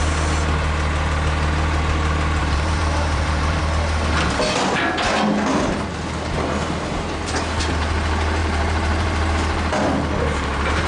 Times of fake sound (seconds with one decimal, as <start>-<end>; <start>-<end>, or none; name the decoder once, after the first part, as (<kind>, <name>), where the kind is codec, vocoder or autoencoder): 2.4-3.6 (vocoder, BigVGAN v2); 8.4-9.3